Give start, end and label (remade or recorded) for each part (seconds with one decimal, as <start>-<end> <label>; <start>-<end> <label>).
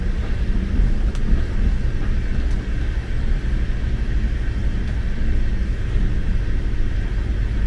0.0-7.7 recorded